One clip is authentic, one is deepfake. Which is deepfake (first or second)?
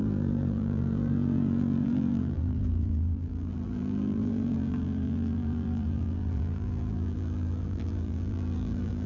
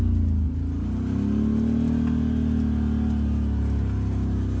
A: first